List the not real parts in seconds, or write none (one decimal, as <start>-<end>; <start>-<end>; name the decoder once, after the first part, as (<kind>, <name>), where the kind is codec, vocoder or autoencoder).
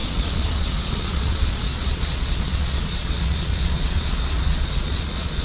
0.0-5.4 (vocoder, Vocos)